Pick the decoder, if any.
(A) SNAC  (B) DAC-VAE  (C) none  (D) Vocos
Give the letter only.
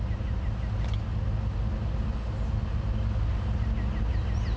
C